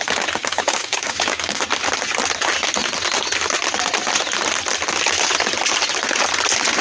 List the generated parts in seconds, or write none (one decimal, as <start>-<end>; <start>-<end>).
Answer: 0.4-1.6